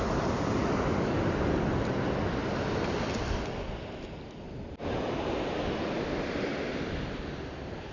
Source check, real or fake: real